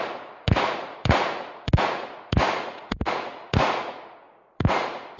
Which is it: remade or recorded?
remade